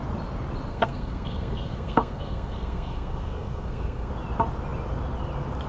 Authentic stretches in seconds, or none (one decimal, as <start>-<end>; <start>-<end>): 0.0-0.7; 4.1-5.7